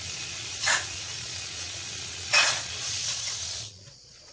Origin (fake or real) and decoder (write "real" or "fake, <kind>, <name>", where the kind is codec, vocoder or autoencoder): fake, vocoder, Vocos